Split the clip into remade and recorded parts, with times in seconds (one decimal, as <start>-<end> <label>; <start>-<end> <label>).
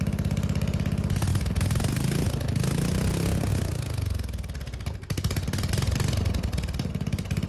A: 0.0-7.5 recorded